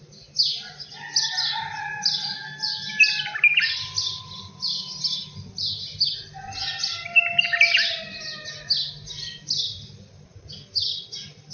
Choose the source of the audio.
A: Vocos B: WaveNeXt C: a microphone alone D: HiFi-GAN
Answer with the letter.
C